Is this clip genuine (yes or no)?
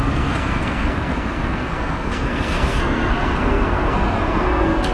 no